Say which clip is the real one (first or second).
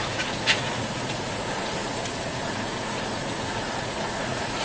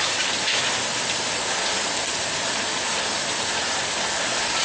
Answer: second